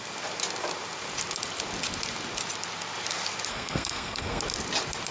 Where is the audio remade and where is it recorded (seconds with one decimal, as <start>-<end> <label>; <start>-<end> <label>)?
0.0-3.5 recorded; 3.5-4.4 remade; 4.4-5.1 recorded